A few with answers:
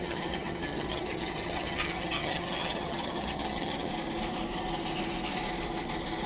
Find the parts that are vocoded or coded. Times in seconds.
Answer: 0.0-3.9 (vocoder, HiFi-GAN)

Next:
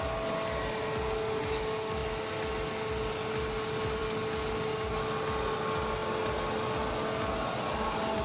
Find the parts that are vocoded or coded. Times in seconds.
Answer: none

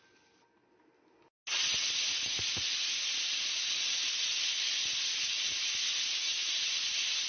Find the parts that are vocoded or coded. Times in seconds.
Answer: none